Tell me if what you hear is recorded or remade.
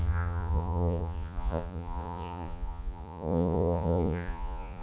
remade